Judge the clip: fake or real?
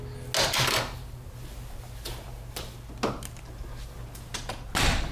real